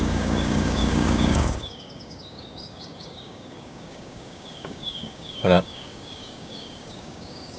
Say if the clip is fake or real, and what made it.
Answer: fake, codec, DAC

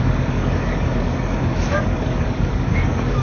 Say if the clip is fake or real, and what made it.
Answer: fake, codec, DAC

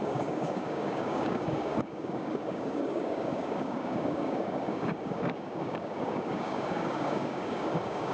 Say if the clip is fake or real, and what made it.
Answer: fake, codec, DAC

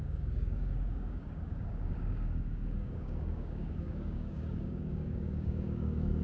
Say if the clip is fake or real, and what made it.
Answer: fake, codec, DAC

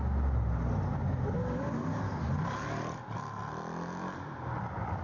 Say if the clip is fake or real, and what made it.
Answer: real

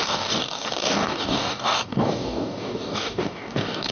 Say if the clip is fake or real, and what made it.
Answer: fake, codec, DAC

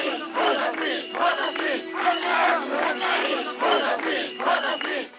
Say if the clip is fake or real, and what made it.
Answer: fake, codec, DAC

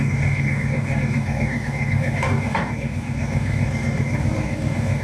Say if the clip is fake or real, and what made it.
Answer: fake, codec, DAC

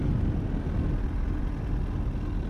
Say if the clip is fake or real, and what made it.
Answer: real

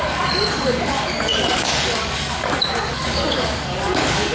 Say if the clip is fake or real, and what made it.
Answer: fake, codec, DAC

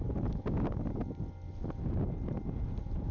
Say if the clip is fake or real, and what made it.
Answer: real